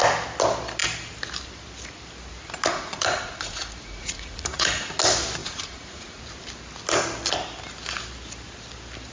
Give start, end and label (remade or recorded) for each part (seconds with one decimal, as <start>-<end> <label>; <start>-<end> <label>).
0.0-2.7 recorded; 2.7-5.0 remade; 5.0-5.4 recorded; 5.4-6.2 remade; 6.2-9.1 recorded